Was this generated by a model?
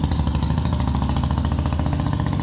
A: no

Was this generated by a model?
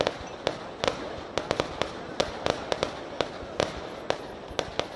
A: no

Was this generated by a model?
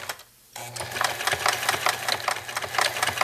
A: no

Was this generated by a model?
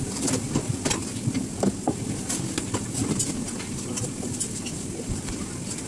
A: yes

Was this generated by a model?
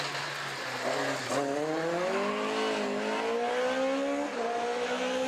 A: no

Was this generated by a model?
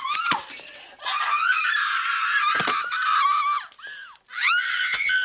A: no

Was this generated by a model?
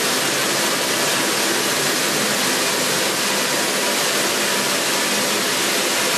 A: no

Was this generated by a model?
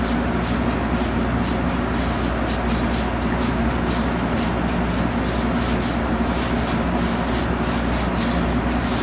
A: no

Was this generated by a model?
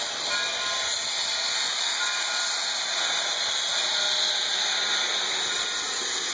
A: no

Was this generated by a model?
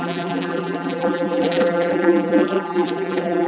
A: yes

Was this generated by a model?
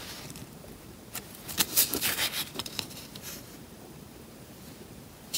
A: yes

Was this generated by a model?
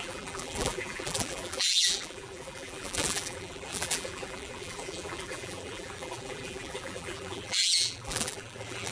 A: yes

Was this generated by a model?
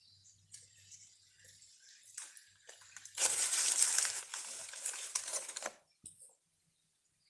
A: yes